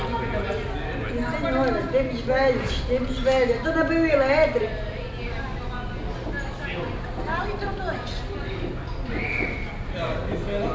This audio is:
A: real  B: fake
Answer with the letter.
A